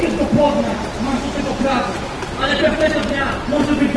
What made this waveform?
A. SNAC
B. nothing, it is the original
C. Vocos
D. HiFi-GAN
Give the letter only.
B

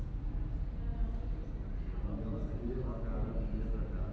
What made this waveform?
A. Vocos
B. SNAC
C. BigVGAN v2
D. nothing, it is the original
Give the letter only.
D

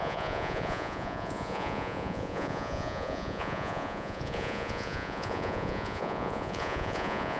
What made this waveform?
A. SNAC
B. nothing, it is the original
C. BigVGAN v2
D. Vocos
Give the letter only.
D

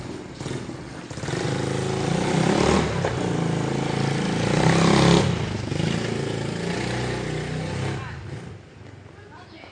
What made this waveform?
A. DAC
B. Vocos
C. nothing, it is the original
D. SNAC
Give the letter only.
C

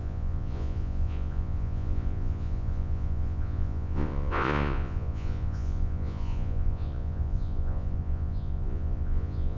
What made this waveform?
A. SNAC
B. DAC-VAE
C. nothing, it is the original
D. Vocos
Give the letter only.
D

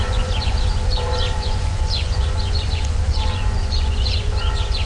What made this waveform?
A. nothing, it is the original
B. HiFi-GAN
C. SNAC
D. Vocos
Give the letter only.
D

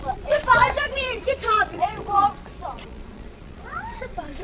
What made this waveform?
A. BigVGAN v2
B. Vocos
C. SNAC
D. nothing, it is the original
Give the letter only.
B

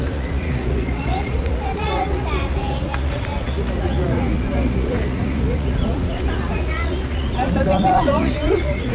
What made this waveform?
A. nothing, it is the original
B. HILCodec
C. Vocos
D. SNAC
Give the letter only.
C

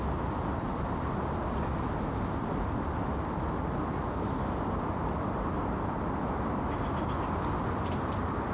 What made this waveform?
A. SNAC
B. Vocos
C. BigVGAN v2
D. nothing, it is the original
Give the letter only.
D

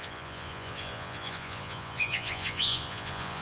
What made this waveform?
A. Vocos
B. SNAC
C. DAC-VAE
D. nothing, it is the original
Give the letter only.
A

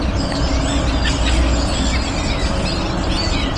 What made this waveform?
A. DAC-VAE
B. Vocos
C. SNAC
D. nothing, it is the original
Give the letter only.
D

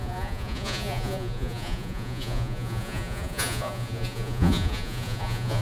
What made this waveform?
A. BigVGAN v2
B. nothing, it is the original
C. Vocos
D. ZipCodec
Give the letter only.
C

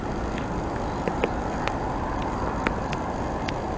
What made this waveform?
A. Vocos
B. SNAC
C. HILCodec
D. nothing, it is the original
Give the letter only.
D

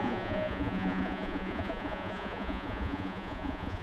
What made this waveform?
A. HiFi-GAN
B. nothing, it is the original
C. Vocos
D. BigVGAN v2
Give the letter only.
C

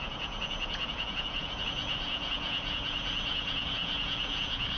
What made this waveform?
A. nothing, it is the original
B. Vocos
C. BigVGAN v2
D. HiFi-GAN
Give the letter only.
B